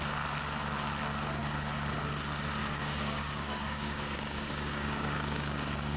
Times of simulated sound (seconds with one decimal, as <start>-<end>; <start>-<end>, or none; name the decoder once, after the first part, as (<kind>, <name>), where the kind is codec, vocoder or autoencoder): 2.6-6.0 (codec, DAC)